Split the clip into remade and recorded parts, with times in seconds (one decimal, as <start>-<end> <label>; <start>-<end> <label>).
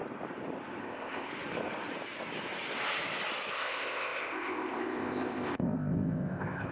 0.0-0.8 recorded; 0.8-1.3 remade; 1.3-3.5 recorded; 3.5-6.7 remade